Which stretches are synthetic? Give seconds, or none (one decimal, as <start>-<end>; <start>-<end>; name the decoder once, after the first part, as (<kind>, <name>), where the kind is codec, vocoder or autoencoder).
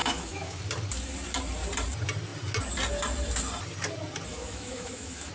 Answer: 0.0-0.6 (autoencoder, DAC-VAE); 4.3-5.3